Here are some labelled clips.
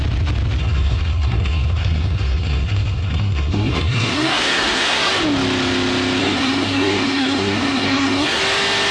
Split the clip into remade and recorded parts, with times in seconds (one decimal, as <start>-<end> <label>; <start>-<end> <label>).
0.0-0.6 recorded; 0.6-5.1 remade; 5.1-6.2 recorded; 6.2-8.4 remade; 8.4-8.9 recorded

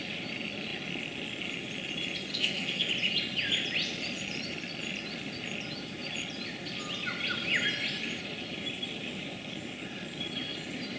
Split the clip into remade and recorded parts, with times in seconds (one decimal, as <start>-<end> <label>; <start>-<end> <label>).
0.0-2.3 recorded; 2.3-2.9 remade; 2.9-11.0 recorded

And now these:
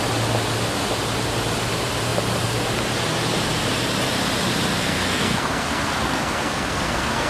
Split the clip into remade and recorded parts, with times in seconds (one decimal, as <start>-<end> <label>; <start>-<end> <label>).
0.0-4.8 recorded; 4.8-7.3 remade

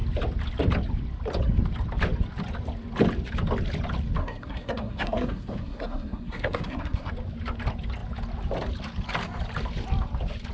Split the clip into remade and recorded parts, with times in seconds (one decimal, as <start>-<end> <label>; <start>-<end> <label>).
0.0-4.2 recorded; 4.2-7.1 remade; 7.1-10.5 recorded